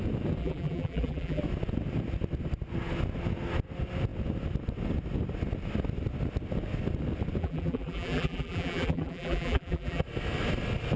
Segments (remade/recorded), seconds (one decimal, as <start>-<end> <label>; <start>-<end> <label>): 0.0-0.4 recorded; 0.4-1.4 remade; 1.4-7.4 recorded; 7.4-10.0 remade; 10.0-11.0 recorded